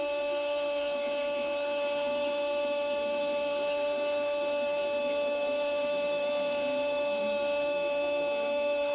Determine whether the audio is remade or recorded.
remade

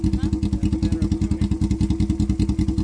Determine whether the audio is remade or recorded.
recorded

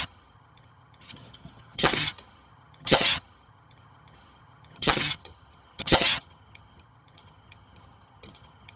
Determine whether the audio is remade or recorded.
remade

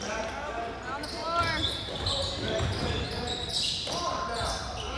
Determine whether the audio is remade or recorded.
recorded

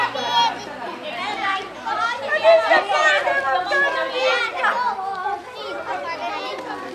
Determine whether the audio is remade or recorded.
recorded